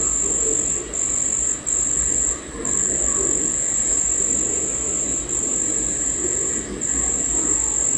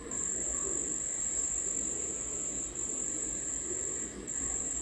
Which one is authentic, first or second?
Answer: first